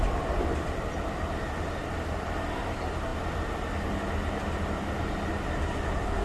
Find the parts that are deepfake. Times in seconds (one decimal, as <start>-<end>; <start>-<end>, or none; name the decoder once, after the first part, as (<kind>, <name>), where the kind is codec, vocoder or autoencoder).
none